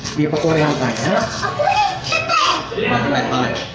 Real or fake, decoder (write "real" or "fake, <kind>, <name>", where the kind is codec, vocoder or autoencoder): fake, codec, SNAC